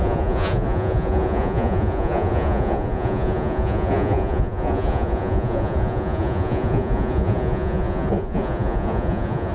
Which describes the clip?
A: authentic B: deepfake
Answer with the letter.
B